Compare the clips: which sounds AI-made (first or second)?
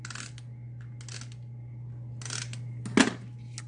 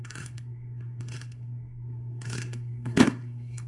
second